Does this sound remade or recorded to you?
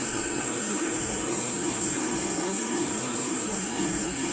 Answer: remade